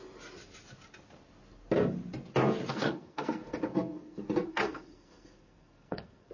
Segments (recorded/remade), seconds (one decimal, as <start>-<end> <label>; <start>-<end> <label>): 0.0-2.7 recorded; 2.7-6.3 remade